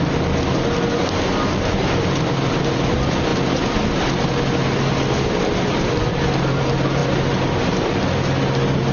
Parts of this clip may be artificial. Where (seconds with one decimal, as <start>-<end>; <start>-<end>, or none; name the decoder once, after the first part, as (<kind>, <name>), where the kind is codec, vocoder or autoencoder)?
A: 1.8-2.3 (vocoder, BigVGAN v2); 7.0-8.0